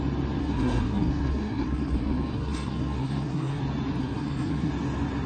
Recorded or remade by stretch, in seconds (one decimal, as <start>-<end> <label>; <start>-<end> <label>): 0.0-0.4 recorded; 0.4-3.6 remade; 3.6-4.0 recorded; 4.0-4.7 remade; 4.7-5.3 recorded